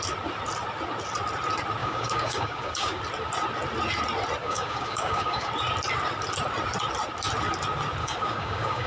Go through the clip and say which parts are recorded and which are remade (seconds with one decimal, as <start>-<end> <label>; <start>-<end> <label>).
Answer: 0.0-1.8 recorded; 1.8-3.0 remade; 3.0-4.4 recorded; 4.4-5.5 remade; 5.5-8.0 recorded; 8.0-8.9 remade